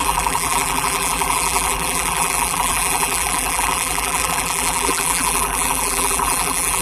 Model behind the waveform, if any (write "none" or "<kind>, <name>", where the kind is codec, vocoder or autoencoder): vocoder, BigVGAN v2